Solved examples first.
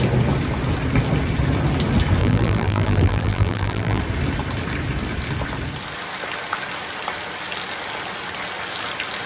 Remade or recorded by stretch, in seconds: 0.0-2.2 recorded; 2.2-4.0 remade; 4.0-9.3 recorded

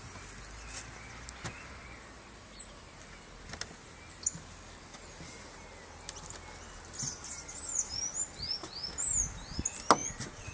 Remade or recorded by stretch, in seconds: 0.0-10.0 recorded; 10.0-10.5 remade

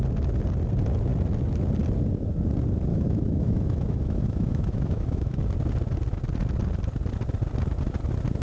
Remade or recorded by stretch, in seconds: 0.0-2.9 recorded; 2.9-5.4 remade; 5.4-8.4 recorded